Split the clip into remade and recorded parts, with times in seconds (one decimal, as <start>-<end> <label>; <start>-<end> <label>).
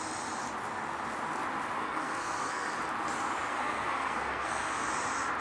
0.0-1.8 recorded; 1.8-2.7 remade; 2.7-3.5 recorded; 3.5-4.9 remade; 4.9-5.4 recorded